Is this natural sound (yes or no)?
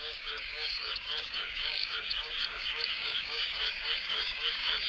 no